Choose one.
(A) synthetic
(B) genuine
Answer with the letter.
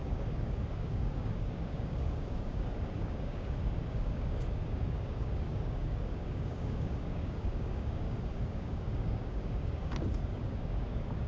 A